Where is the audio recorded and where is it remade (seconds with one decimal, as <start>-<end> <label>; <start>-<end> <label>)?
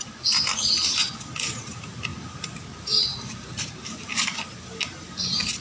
0.0-5.6 recorded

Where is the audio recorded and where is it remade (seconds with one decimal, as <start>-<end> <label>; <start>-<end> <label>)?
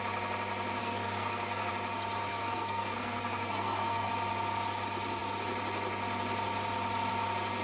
0.0-0.8 recorded; 0.8-1.7 remade; 1.7-2.3 recorded; 2.3-4.1 remade; 4.1-7.6 recorded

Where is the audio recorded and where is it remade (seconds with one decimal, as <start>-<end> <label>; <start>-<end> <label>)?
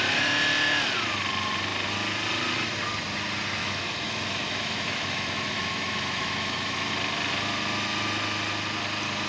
0.0-3.6 recorded; 3.6-6.9 remade; 6.9-9.3 recorded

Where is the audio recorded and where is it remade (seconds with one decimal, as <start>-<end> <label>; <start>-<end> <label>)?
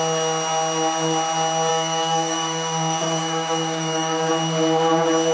0.0-1.7 recorded; 1.7-4.3 remade; 4.3-5.3 recorded